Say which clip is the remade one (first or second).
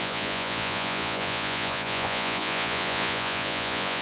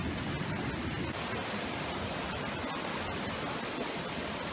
first